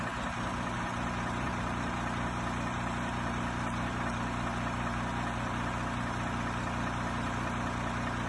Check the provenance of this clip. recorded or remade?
recorded